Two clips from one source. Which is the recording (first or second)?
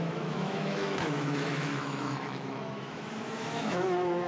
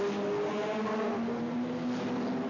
second